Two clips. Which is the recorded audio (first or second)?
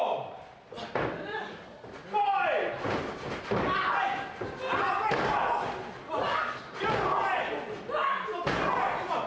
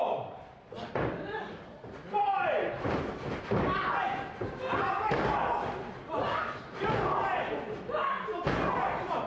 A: first